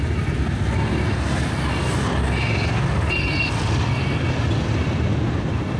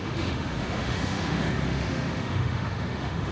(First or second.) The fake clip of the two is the second